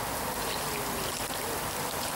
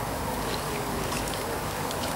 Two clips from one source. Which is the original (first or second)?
first